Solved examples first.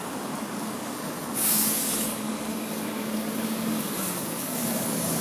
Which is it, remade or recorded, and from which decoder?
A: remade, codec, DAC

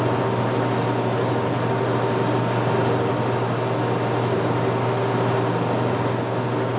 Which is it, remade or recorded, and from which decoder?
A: recorded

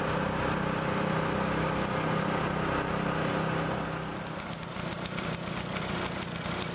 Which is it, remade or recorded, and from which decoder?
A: recorded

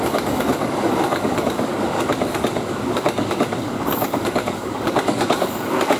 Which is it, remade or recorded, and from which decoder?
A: remade, codec, DAC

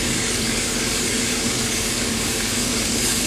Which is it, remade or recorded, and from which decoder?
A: remade, codec, DAC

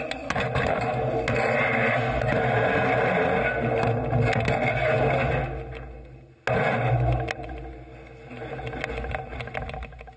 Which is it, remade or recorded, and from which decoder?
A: recorded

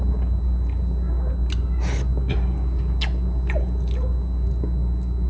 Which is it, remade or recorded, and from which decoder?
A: recorded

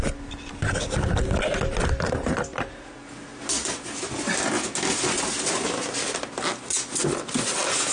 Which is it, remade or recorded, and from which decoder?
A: recorded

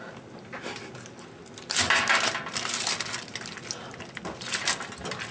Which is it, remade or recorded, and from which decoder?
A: recorded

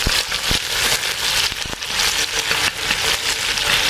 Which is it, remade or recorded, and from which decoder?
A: recorded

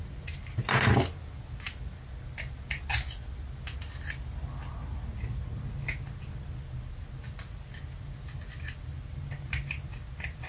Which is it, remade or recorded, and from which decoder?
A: recorded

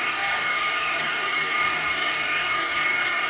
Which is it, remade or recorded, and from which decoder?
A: remade, codec, DAC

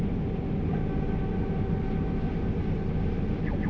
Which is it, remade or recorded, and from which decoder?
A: recorded